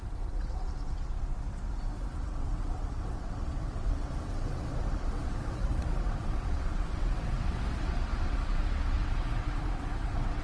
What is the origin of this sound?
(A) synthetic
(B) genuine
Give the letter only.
A